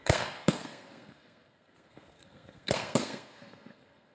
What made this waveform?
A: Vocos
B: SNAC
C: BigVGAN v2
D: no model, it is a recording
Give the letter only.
B